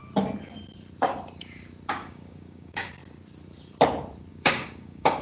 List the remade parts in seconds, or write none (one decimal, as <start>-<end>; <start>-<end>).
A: 1.9-3.0; 4.3-5.2